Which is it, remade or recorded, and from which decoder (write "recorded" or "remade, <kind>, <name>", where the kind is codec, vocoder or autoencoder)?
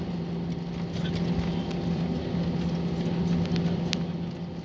recorded